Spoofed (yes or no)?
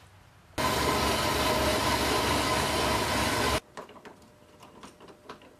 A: no